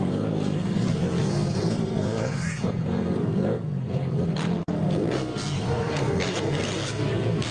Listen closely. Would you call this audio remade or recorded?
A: remade